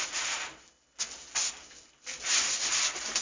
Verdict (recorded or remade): recorded